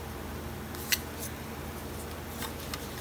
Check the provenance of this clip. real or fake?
real